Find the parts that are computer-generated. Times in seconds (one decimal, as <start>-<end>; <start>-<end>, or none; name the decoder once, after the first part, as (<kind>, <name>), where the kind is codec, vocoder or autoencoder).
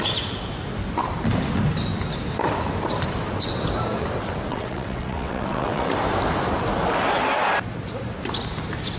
4.5-5.9 (vocoder, WaveNeXt)